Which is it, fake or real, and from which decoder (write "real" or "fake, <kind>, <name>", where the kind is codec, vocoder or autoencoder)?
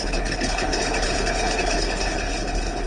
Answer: fake, codec, HILCodec